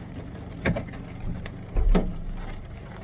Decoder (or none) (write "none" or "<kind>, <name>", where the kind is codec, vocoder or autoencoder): vocoder, BigVGAN v2